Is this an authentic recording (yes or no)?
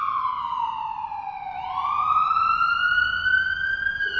yes